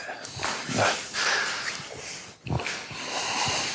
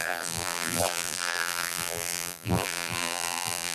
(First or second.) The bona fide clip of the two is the first